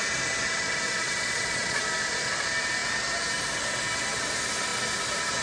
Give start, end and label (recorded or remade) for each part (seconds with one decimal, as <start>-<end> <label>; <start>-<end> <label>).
0.0-1.0 recorded; 1.0-1.8 remade; 1.8-5.4 recorded